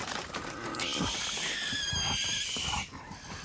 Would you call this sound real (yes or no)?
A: yes